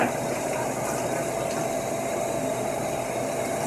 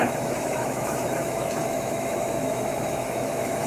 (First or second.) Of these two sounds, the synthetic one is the second